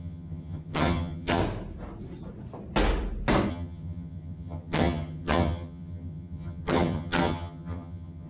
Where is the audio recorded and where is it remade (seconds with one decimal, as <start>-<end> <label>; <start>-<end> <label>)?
0.0-1.4 remade; 1.4-3.5 recorded; 3.5-8.3 remade